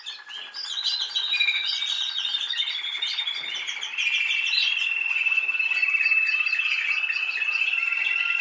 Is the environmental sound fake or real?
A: real